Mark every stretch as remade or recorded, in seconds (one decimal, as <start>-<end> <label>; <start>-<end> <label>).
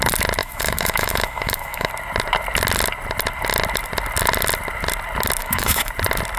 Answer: 0.0-0.4 recorded; 0.4-1.9 remade; 1.9-5.4 recorded; 5.4-5.9 remade; 5.9-6.4 recorded